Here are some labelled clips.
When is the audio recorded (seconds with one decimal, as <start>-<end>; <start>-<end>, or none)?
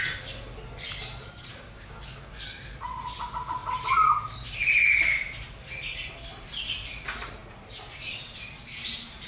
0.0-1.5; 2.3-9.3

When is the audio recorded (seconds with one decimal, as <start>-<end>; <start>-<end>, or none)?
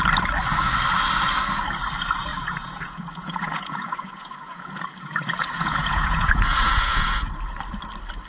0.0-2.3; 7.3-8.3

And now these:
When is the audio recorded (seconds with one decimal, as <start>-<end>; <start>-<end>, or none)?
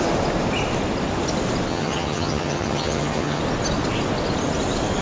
0.0-1.7; 3.4-5.0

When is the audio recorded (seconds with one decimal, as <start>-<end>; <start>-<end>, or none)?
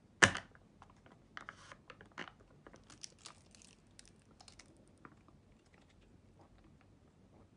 0.0-7.6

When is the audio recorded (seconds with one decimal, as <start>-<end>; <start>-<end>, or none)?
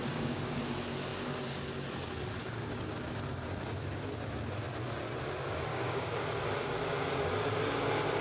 0.6-2.4; 3.0-5.7; 6.2-8.2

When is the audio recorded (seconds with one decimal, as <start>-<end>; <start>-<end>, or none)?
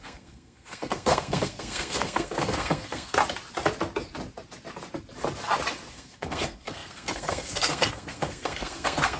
3.2-5.9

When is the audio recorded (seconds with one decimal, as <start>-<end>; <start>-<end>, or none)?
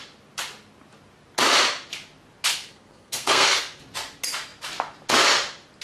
0.0-2.5; 3.8-5.8